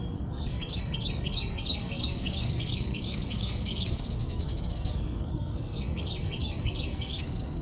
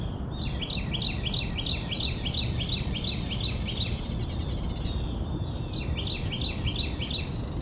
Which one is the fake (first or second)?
first